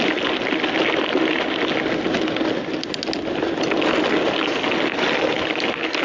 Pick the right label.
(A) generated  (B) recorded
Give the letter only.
B